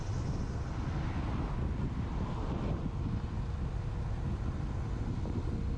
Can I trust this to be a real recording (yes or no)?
yes